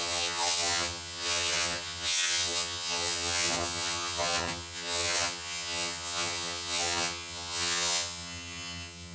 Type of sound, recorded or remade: remade